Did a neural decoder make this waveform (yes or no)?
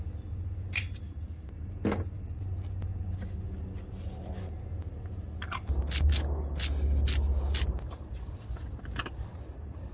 no